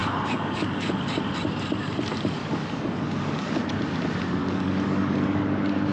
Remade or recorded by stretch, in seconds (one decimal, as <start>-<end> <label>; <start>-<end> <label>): 0.0-0.9 remade; 0.9-2.4 recorded; 2.4-3.5 remade; 3.5-4.4 recorded; 4.4-5.4 remade; 5.4-5.9 recorded